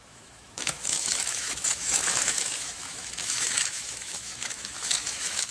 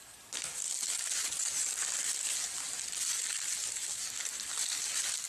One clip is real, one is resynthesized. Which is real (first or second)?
second